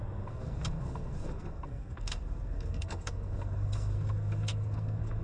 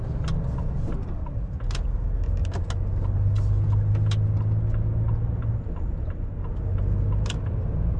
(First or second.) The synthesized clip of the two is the first